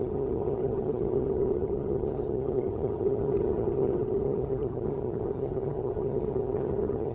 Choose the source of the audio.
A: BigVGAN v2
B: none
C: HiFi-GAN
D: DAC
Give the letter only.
C